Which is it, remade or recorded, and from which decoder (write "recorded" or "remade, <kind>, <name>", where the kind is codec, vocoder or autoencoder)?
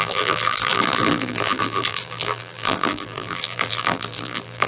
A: remade, vocoder, BigVGAN v2